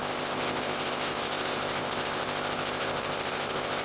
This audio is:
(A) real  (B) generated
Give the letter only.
B